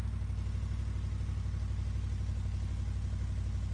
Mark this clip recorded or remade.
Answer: recorded